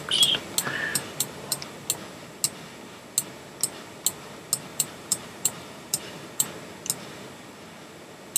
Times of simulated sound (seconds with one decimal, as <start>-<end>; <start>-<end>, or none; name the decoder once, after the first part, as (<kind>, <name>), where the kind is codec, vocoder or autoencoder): 0.9-1.6 (vocoder, BigVGAN v2); 4.7-6.5